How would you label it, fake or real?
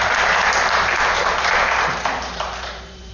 fake